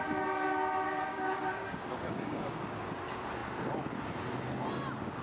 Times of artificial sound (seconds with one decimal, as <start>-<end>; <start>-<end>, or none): 1.1-2.9